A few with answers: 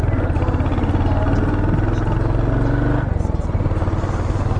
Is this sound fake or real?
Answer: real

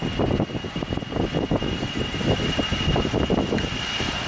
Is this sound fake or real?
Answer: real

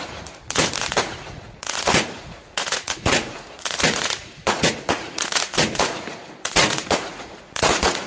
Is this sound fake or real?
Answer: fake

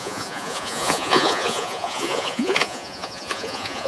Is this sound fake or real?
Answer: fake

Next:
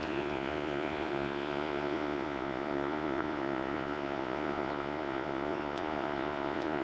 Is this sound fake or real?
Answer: fake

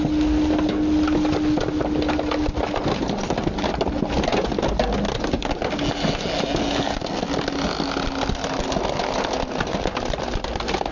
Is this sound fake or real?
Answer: real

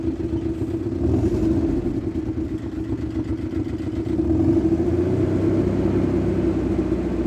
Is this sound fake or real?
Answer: real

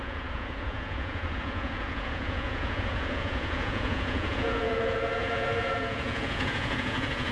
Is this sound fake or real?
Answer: fake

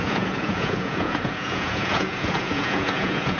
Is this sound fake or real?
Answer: fake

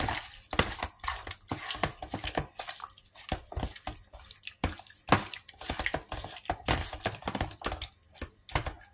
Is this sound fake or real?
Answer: real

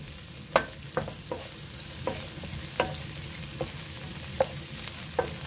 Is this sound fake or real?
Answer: real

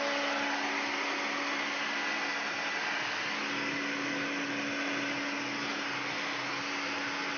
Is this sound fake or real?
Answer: real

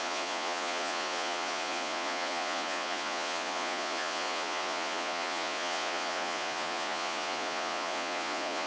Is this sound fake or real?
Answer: fake